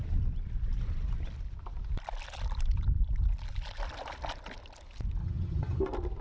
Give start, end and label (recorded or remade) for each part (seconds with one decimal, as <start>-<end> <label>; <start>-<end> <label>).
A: 0.0-5.2 recorded; 5.2-5.8 remade; 5.8-6.2 recorded